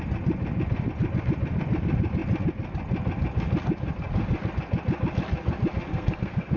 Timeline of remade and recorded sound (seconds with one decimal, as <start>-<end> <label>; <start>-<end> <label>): 0.0-5.9 recorded; 5.9-6.6 remade

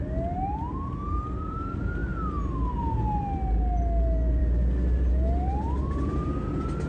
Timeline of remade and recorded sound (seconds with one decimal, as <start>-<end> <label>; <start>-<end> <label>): 0.0-6.9 recorded

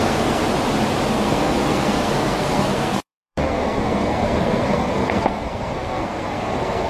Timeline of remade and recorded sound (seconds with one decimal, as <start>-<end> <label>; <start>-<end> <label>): 0.0-0.4 remade; 0.4-1.1 recorded; 1.1-6.9 remade

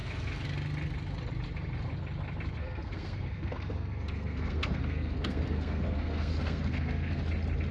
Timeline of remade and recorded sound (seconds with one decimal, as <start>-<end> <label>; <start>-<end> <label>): 0.0-2.6 recorded; 2.6-7.2 remade; 7.2-7.7 recorded

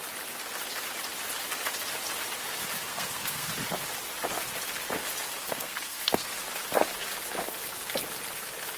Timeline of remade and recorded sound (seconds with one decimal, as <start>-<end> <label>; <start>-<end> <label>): 0.0-2.9 recorded; 2.9-3.5 remade; 3.5-5.4 recorded; 5.4-6.3 remade; 6.3-8.8 recorded

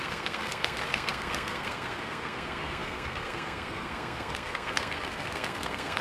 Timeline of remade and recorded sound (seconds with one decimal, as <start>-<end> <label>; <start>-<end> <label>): 0.0-6.0 remade

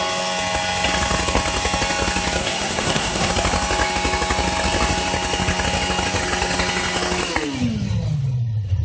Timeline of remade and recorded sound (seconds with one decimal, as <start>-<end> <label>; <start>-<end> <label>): 0.0-2.4 recorded; 2.4-3.3 remade; 3.3-8.8 recorded